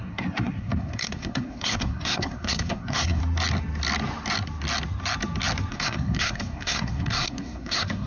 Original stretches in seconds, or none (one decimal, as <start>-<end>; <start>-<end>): 3.2-5.7